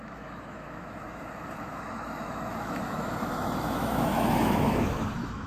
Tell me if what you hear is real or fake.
fake